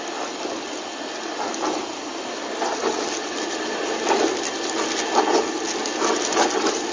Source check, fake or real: real